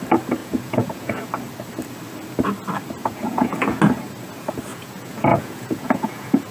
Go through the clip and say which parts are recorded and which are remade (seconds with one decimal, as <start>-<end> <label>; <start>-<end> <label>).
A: 0.0-0.4 recorded; 0.4-1.3 remade; 1.3-3.0 recorded; 3.0-3.8 remade; 3.8-4.7 recorded; 4.7-6.5 remade